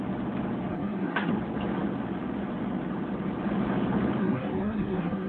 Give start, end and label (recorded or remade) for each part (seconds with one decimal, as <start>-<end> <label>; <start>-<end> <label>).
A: 0.0-0.7 recorded; 0.7-1.3 remade; 1.3-4.2 recorded; 4.2-5.3 remade